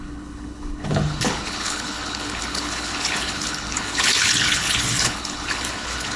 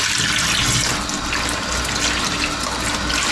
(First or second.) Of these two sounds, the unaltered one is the second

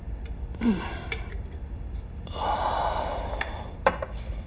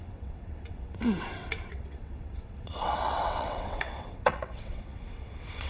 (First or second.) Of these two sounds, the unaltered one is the first